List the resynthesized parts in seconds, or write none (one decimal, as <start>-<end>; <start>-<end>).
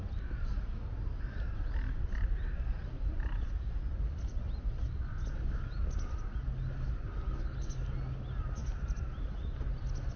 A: none